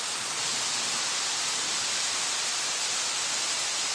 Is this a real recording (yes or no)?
yes